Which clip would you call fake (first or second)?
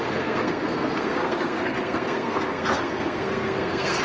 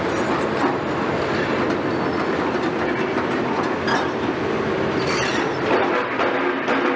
first